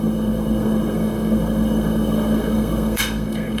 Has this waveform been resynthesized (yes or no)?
yes